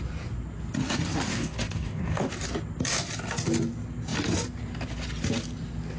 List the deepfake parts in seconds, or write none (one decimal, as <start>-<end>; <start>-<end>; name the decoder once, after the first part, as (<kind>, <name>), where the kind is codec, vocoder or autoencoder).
1.3-2.3 (codec, DAC)